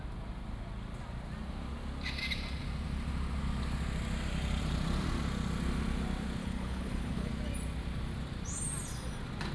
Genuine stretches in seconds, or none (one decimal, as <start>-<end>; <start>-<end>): 0.0-6.4; 7.3-9.5